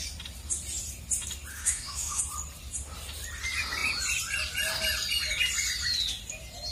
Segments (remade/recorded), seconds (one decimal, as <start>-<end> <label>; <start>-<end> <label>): 0.0-1.5 recorded; 1.5-2.2 remade; 2.2-6.7 recorded

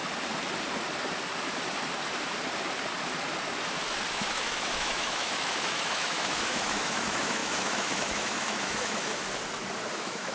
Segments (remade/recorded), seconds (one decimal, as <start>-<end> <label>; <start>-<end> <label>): 0.0-4.1 recorded; 4.1-9.2 remade; 9.2-9.9 recorded; 9.9-10.3 remade